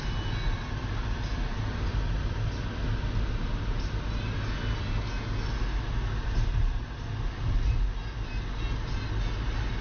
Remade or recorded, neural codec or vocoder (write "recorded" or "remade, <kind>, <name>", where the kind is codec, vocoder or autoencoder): recorded